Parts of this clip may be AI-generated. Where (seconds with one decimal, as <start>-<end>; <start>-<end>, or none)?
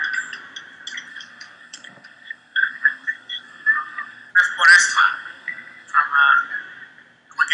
1.1-4.3; 4.9-6.0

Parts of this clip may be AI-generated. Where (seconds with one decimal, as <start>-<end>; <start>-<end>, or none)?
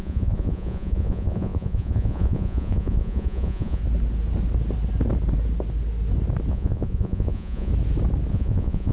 0.0-3.8; 6.5-7.7; 8.3-8.9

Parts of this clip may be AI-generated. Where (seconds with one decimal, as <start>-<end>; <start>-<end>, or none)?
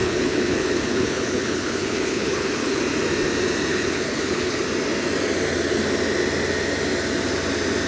0.0-2.8; 3.7-4.6